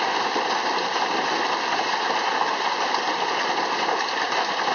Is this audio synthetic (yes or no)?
no